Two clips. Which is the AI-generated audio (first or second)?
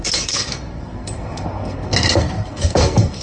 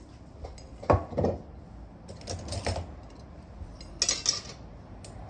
first